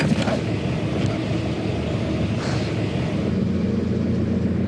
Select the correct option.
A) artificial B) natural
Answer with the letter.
B